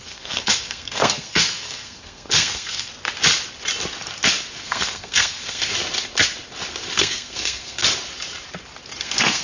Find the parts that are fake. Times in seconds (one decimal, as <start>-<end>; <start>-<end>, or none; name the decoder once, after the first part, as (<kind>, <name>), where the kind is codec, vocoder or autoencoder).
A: 0.0-2.9 (codec, SNAC); 4.6-5.7; 7.0-7.8; 9.0-9.4